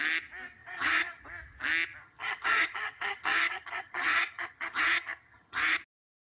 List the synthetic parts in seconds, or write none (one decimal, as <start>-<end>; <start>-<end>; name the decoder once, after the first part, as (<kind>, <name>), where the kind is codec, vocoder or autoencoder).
0.6-1.2 (vocoder, HiFi-GAN); 2.0-5.8

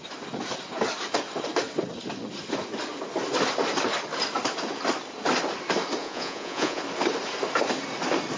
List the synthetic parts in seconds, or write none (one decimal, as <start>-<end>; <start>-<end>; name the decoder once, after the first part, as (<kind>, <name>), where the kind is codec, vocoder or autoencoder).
6.0-6.8 (vocoder, Vocos)